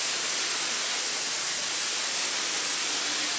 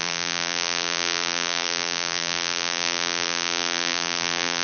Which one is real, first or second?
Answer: first